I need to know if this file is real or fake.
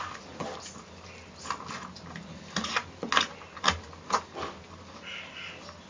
real